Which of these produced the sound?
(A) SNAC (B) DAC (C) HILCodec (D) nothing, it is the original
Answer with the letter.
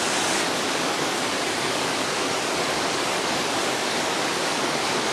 B